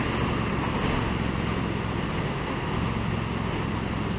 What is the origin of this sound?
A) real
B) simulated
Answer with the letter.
A